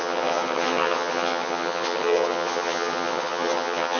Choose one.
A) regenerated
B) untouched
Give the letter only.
A